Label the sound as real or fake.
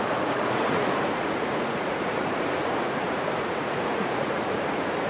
fake